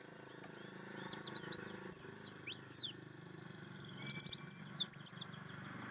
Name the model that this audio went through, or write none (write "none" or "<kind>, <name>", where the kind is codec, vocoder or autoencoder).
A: none